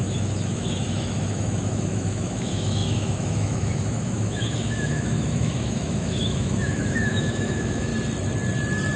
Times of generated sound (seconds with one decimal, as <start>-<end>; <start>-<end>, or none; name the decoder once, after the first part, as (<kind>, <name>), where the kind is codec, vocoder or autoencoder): 0.0-7.9 (autoencoder, DAC-VAE)